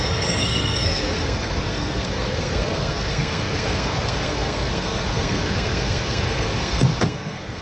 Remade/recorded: remade